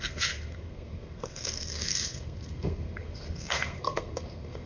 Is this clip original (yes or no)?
no